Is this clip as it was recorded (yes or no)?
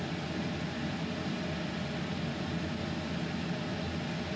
yes